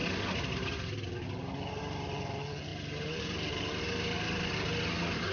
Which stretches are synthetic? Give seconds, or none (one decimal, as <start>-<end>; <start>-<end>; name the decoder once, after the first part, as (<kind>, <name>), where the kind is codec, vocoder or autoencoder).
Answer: none